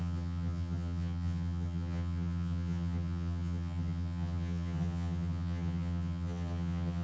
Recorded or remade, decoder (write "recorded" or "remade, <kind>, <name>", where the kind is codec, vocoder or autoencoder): remade, vocoder, HiFi-GAN